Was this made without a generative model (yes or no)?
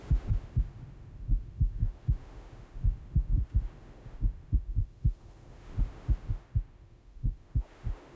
no